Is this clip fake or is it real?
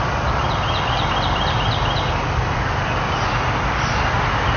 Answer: real